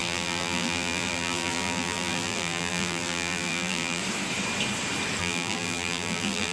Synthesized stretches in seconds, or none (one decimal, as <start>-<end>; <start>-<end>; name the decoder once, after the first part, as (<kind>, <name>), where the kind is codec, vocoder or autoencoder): 0.0-4.0 (vocoder, BigVGAN v2); 5.2-6.5